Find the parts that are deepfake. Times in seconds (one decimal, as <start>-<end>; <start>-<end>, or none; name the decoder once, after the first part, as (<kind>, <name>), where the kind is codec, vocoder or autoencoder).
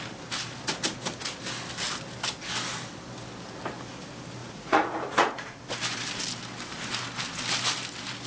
4.4-5.6 (vocoder, Vocos)